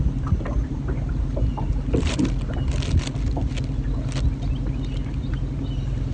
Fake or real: real